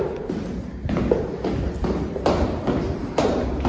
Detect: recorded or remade recorded